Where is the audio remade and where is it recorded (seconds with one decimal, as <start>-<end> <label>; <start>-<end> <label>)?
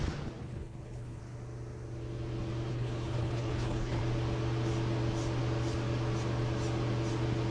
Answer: 0.0-0.4 recorded; 0.4-1.2 remade; 1.2-2.7 recorded; 2.7-4.0 remade; 4.0-7.5 recorded